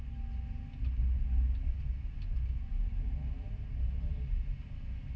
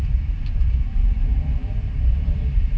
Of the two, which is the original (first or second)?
first